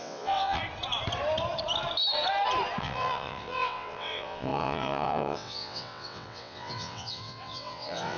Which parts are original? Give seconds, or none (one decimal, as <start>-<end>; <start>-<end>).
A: 0.6-2.8